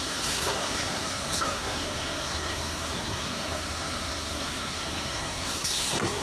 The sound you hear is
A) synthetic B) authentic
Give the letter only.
A